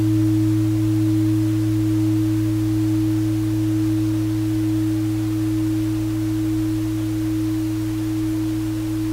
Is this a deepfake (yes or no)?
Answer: no